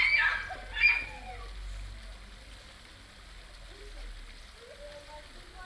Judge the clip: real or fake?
real